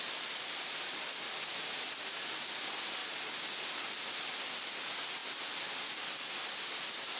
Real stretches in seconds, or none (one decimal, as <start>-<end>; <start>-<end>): 0.0-3.0; 3.6-7.2